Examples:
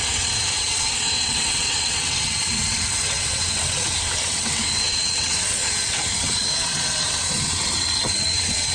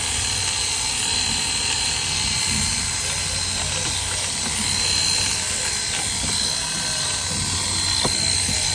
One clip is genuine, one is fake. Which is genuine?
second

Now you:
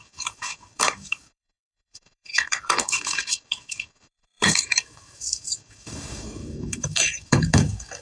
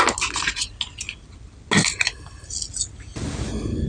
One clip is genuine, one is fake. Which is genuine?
second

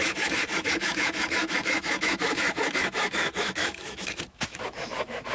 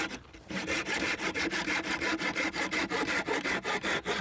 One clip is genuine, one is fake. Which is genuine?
second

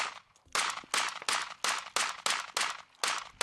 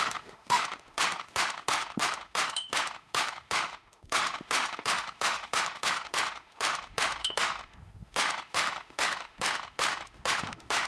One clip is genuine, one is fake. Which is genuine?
first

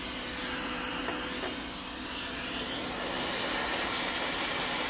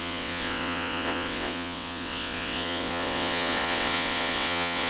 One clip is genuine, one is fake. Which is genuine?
first